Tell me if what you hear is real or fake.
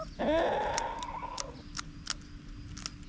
real